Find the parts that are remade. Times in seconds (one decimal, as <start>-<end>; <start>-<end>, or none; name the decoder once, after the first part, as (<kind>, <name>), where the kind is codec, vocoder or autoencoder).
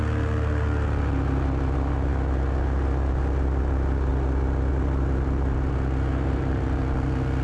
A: 4.1-4.7 (vocoder, BigVGAN v2)